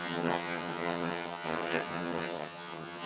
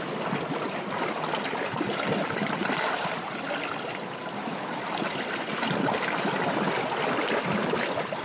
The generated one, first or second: first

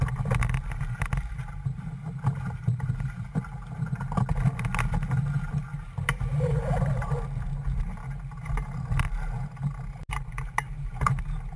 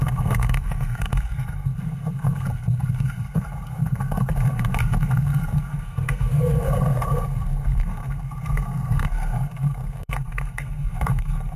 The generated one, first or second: second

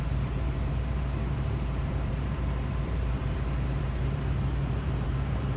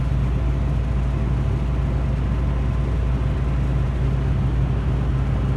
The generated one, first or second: first